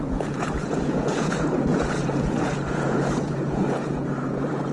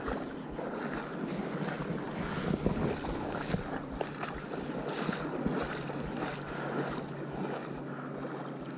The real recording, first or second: second